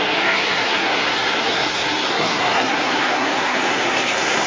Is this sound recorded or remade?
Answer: remade